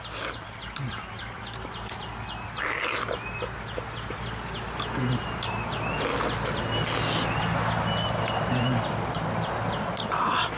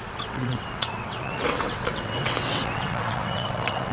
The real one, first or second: first